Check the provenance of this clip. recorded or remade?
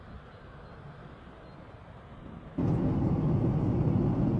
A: recorded